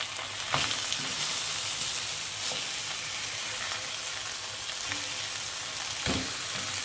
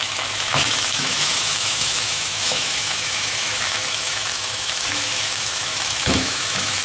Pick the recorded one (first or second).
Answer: first